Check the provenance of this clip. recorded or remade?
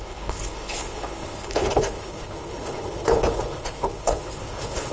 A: remade